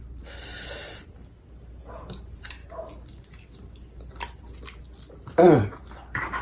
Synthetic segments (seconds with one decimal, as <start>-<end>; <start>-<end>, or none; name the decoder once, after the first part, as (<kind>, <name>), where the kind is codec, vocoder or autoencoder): none